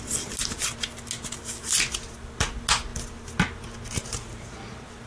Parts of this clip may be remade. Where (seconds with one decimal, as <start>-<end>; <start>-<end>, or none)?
none